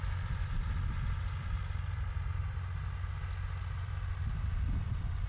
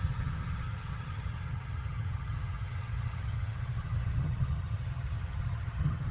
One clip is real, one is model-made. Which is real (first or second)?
first